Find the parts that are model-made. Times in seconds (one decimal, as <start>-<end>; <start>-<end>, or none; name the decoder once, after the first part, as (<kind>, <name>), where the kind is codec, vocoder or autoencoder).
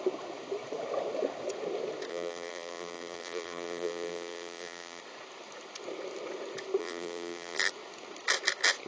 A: 2.1-5.0 (vocoder, BigVGAN v2); 6.8-7.7